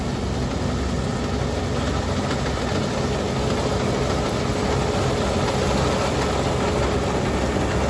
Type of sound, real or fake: real